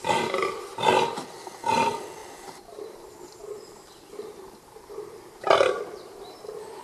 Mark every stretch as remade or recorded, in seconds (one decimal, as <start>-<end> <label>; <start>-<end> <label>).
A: 0.0-2.2 recorded; 2.2-6.3 remade; 6.3-6.8 recorded